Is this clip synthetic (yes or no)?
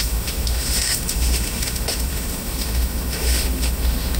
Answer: yes